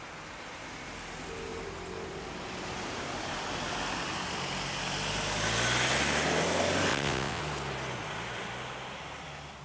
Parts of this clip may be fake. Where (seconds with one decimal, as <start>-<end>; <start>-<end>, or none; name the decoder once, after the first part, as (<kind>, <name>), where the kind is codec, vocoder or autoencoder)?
6.9-7.4 (vocoder, WaveNeXt)